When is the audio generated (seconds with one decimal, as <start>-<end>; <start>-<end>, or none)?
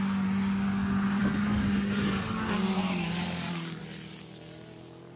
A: 1.2-3.8